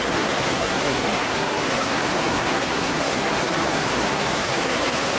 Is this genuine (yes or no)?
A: no